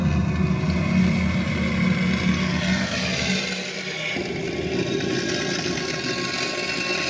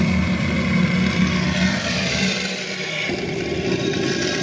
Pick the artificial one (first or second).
second